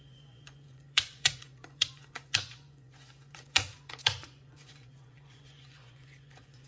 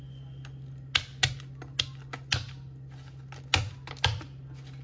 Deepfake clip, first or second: first